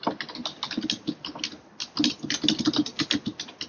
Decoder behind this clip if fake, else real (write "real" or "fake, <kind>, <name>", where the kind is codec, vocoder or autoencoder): real